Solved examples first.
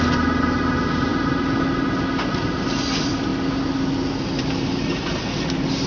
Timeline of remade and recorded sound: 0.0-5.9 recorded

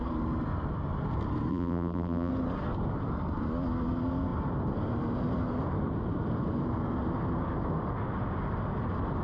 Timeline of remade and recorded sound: 0.0-1.5 recorded; 1.5-2.3 remade; 2.3-9.2 recorded

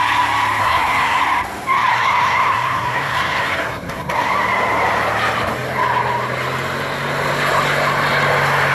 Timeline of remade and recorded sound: 0.0-0.6 recorded; 0.6-1.2 remade; 1.2-1.9 recorded; 1.9-4.3 remade; 4.3-8.7 recorded

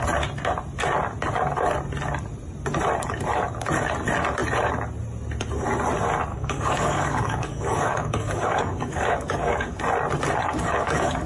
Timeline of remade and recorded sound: 0.0-6.3 recorded; 6.3-9.8 remade; 9.8-10.4 recorded; 10.4-11.3 remade

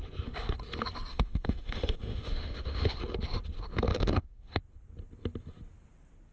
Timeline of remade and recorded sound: 0.0-1.1 recorded; 1.1-3.0 remade; 3.0-3.9 recorded; 3.9-4.6 remade; 4.6-6.3 recorded